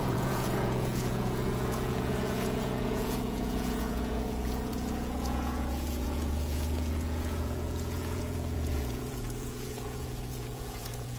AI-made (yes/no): yes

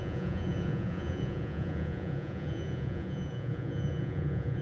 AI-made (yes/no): yes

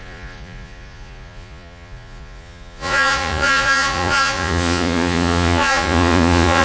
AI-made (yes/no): yes